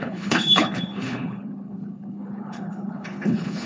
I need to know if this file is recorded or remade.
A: remade